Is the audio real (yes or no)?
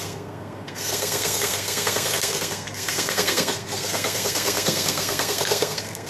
no